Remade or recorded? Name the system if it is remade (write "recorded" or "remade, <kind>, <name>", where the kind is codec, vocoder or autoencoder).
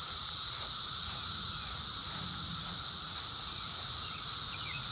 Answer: remade, vocoder, Vocos